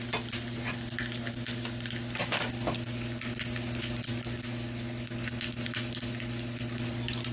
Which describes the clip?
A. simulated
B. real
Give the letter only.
B